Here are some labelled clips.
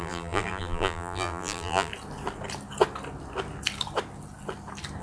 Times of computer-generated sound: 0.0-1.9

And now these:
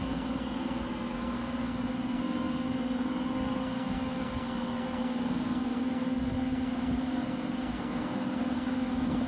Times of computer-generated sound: 0.0-9.3